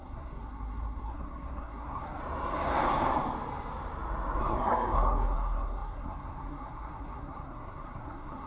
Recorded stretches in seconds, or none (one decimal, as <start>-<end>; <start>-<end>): 2.2-4.4